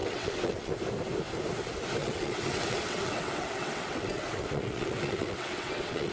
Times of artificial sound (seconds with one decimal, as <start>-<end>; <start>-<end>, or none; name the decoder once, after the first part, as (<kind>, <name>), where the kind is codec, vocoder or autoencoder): 0.0-0.7 (vocoder, WaveNeXt); 2.0-6.1